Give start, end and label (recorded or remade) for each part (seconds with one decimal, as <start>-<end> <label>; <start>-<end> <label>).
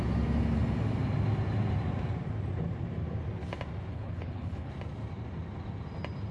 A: 0.0-3.9 recorded; 3.9-4.7 remade; 4.7-6.3 recorded